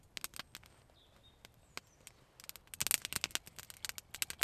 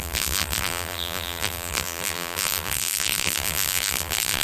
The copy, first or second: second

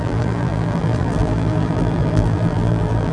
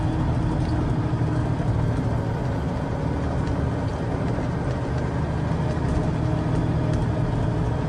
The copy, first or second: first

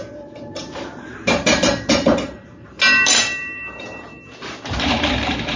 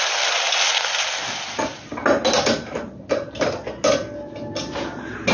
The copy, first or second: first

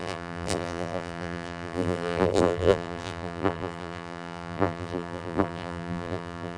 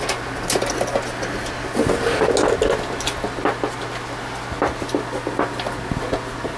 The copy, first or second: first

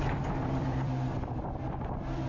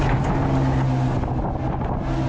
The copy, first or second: first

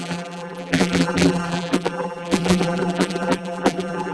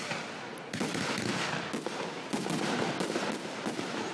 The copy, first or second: first